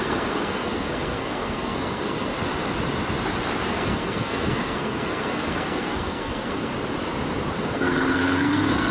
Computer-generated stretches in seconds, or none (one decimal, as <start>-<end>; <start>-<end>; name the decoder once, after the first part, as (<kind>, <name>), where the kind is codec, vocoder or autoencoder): 0.0-2.3 (codec, SNAC); 3.7-6.7; 7.6-8.9